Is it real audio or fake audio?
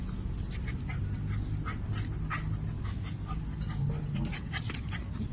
real